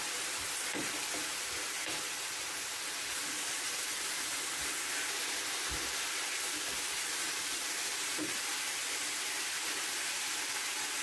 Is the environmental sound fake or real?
fake